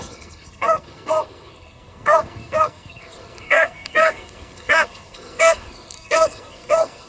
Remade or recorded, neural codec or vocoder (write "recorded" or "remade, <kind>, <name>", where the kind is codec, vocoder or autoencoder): remade, codec, SNAC